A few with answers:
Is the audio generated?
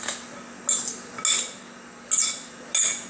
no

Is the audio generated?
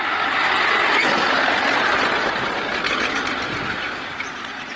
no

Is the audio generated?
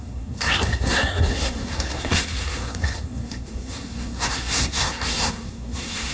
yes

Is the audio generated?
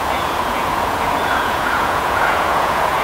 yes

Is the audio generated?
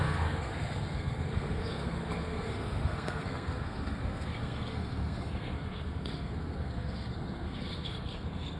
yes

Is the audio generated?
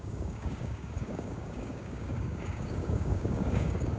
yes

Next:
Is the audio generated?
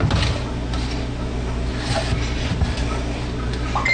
no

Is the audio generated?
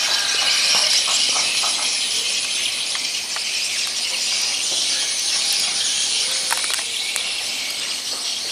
no